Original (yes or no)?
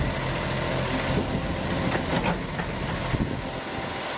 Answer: yes